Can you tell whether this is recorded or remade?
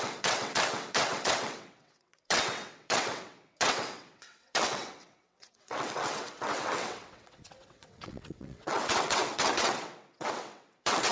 remade